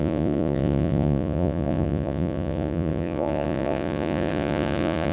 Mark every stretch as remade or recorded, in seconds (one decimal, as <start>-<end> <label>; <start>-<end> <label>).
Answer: 0.0-5.1 remade